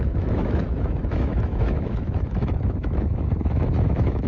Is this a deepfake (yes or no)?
yes